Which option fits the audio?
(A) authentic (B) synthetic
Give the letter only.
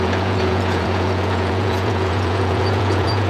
B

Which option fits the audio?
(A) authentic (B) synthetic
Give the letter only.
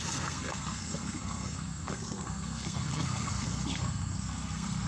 B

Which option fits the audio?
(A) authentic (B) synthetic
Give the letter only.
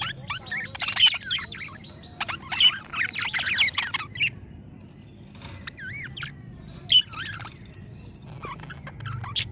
A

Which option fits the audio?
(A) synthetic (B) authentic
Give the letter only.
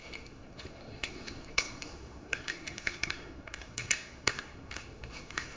A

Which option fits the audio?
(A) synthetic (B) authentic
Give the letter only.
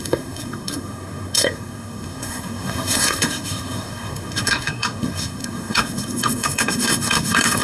A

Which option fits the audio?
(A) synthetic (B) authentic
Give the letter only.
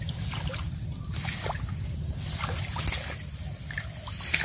B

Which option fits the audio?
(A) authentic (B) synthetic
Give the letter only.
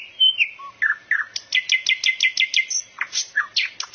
A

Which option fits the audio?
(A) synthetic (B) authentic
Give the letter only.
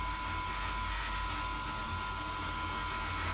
B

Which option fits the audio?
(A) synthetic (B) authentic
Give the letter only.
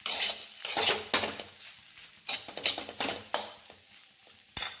B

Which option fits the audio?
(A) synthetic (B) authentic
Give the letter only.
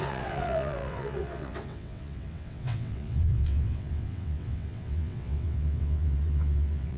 A